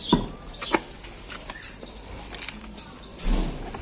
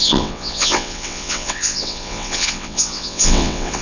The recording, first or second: first